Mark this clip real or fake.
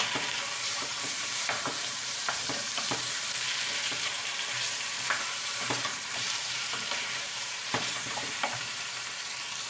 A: fake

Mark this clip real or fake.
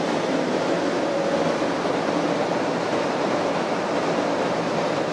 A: fake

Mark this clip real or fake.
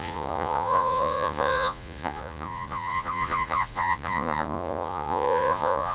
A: fake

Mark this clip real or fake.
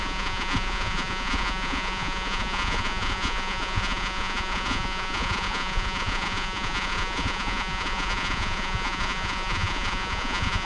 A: fake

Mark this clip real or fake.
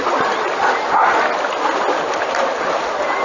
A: real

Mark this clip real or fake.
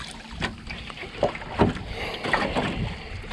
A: real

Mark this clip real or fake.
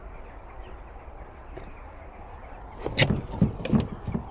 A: real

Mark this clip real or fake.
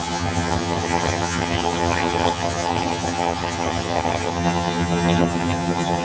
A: fake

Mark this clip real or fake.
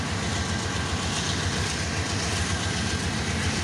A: real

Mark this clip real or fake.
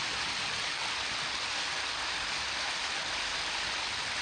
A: real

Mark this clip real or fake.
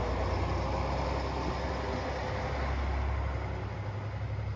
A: real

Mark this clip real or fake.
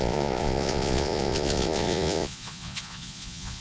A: fake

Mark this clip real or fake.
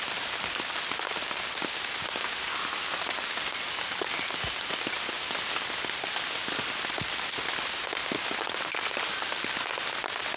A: real